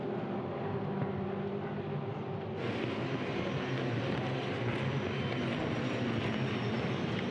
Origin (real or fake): real